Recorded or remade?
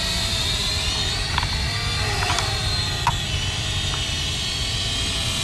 recorded